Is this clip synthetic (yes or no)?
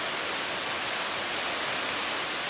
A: no